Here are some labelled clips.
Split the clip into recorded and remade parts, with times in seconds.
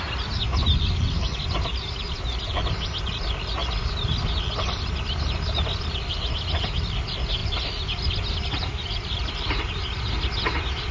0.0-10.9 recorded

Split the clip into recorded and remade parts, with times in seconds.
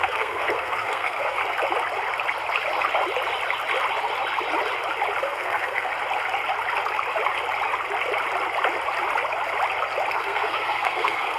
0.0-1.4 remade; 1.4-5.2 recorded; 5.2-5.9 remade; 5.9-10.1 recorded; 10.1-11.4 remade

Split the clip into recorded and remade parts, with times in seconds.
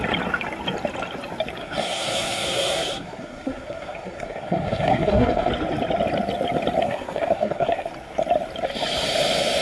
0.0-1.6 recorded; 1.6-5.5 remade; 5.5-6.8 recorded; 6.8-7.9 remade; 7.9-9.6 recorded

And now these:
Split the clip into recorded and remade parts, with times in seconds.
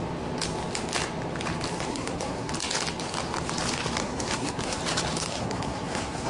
0.0-1.9 recorded; 1.9-2.5 remade; 2.5-4.0 recorded; 4.0-4.8 remade; 4.8-5.3 recorded; 5.3-6.3 remade